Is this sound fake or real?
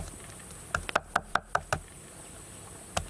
real